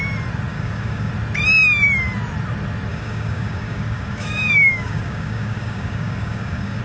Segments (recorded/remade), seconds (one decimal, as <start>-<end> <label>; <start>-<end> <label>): 0.0-0.5 recorded; 0.5-1.1 remade; 1.1-2.9 recorded; 2.9-6.8 remade